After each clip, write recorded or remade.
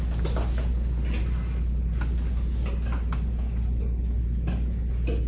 recorded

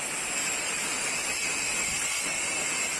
recorded